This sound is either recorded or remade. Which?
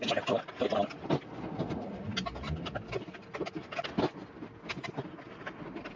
recorded